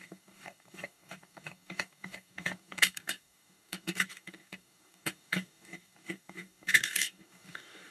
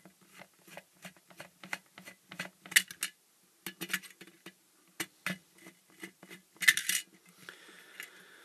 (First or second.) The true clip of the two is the second